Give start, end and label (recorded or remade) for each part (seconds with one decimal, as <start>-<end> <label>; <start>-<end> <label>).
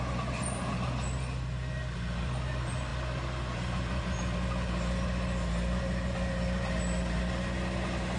0.0-8.2 recorded